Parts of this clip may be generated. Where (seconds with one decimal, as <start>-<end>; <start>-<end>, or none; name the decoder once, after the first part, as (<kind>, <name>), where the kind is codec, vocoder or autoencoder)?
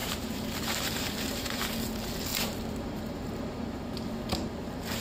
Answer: 0.0-1.7 (vocoder, BigVGAN v2); 2.3-3.8